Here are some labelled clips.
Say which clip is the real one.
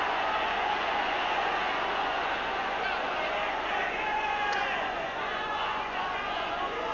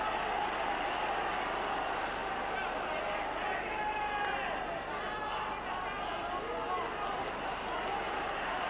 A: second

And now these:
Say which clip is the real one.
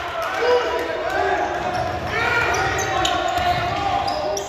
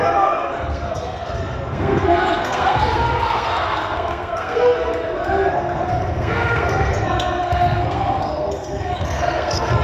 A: first